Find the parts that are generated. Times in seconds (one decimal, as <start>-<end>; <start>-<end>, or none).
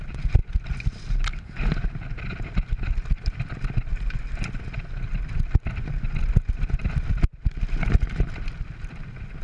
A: none